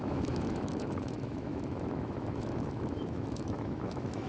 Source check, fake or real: fake